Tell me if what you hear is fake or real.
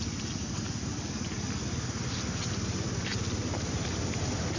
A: real